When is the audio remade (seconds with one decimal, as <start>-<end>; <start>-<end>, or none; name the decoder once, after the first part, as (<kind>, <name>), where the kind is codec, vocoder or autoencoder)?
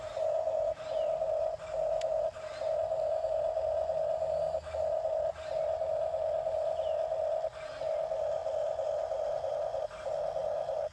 none